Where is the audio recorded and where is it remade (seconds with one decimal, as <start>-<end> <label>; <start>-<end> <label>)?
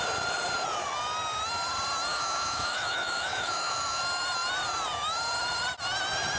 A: 0.0-2.1 recorded; 2.1-4.0 remade; 4.0-6.4 recorded